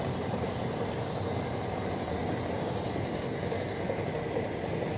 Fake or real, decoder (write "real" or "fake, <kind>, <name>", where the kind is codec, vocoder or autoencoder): real